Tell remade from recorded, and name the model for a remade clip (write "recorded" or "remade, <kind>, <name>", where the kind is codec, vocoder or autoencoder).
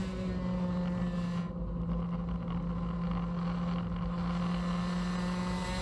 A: recorded